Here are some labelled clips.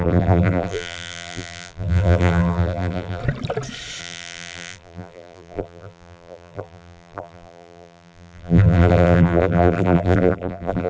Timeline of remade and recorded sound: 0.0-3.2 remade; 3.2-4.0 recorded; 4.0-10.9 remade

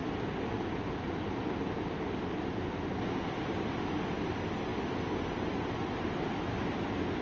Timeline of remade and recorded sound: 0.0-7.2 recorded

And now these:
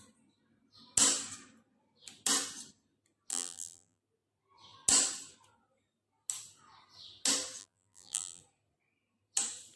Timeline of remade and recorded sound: 0.0-3.3 recorded; 3.3-4.0 remade; 4.0-7.6 recorded; 7.6-8.4 remade; 8.4-9.8 recorded

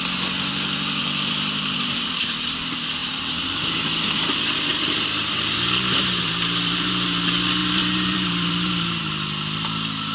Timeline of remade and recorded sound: 0.0-1.0 recorded; 1.0-2.5 remade; 2.5-3.0 recorded; 3.0-6.9 remade; 6.9-7.6 recorded; 7.6-9.0 remade; 9.0-10.1 recorded

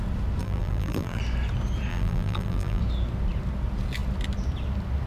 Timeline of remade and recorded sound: 0.0-0.4 recorded; 0.4-1.2 remade; 1.2-1.9 recorded; 1.9-2.8 remade; 2.8-5.1 recorded

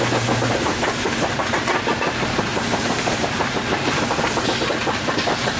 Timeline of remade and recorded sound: 0.0-2.5 recorded; 2.5-3.9 remade; 3.9-5.6 recorded

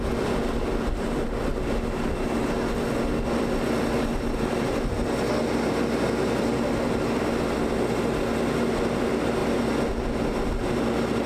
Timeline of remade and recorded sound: 0.0-11.3 recorded